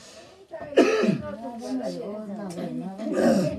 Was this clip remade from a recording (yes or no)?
no